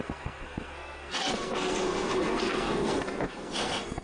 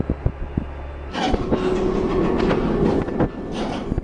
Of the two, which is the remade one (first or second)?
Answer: first